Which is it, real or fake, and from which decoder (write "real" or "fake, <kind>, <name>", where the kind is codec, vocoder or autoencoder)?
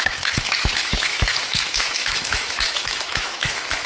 fake, autoencoder, DAC-VAE